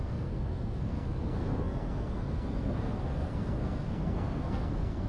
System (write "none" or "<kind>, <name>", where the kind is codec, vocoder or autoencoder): codec, SNAC